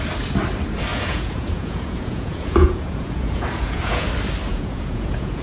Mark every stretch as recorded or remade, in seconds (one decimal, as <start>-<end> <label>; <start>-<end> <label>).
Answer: 0.0-0.9 recorded; 0.9-4.1 remade; 4.1-4.5 recorded; 4.5-5.4 remade